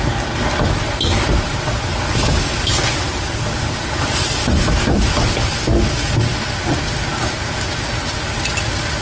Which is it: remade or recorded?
recorded